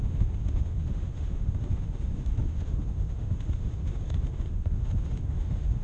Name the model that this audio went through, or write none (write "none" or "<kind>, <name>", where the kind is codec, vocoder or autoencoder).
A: autoencoder, DAC-VAE